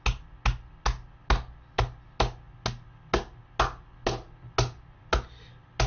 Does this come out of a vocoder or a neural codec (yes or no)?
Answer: no